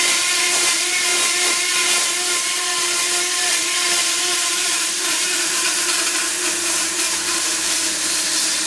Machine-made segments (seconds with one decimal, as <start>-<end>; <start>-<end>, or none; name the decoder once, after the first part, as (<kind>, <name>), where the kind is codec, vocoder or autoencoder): 0.0-1.1 (vocoder, BigVGAN v2); 3.5-8.7